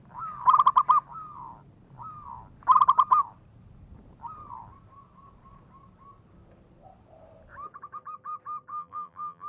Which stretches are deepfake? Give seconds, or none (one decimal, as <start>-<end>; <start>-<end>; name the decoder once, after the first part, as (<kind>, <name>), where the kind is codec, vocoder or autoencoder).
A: 8.7-9.5 (vocoder, BigVGAN v2)